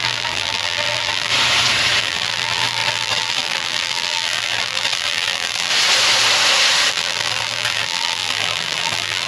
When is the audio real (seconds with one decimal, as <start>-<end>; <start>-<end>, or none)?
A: 1.3-2.0; 5.7-6.9